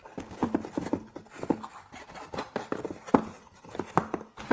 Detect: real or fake real